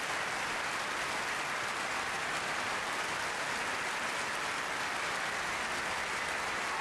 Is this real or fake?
real